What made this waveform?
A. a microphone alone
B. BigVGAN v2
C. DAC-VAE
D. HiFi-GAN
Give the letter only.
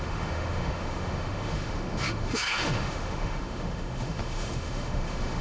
C